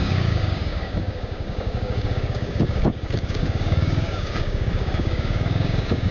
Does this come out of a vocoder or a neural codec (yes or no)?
yes